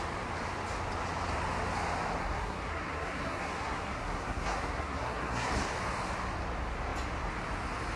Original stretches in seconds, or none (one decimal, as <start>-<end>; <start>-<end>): 0.0-2.2; 5.5-8.0